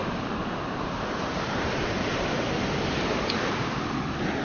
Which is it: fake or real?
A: fake